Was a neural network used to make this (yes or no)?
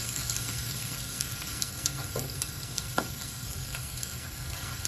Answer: yes